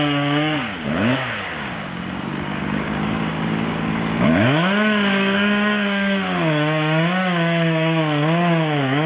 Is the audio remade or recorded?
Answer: remade